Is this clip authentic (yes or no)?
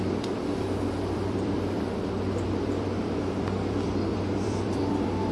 no